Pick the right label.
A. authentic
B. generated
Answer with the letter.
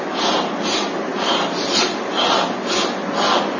A